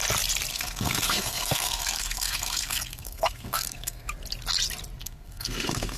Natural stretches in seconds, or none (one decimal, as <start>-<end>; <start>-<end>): 0.0-0.5; 4.1-5.0